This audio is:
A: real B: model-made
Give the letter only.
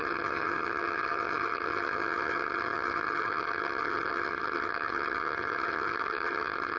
B